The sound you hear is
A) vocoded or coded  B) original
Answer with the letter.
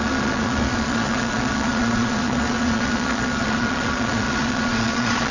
A